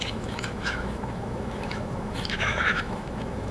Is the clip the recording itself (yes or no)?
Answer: no